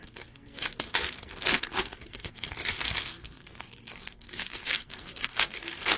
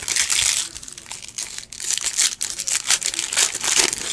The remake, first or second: first